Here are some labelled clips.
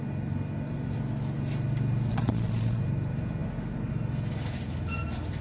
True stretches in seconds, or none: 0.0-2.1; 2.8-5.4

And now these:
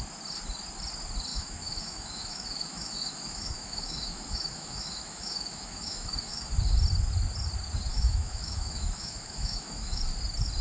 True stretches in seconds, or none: 0.0-1.3; 6.5-7.9; 10.0-10.6

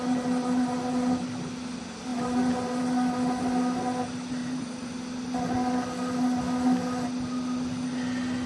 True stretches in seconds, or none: 0.0-2.1; 2.8-4.4; 4.9-8.5

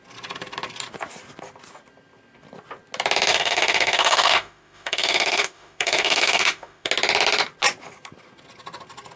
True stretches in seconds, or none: 0.0-3.3; 6.9-9.2

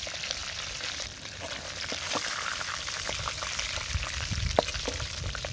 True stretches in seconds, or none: none

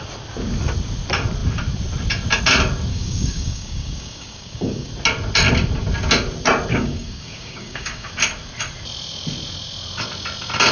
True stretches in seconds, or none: 0.0-2.9; 4.9-6.7; 8.1-10.7